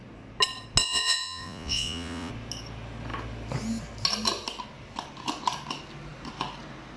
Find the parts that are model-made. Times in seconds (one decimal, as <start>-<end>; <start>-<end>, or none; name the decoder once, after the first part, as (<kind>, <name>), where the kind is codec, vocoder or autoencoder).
0.8-2.3 (vocoder, Vocos)